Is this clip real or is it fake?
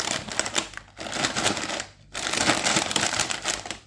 fake